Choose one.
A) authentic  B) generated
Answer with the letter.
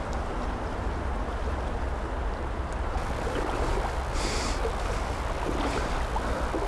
A